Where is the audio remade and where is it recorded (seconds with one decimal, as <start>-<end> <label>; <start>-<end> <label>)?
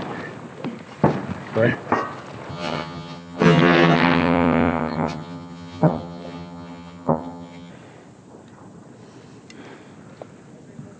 0.0-2.5 recorded; 2.5-7.7 remade; 7.7-11.0 recorded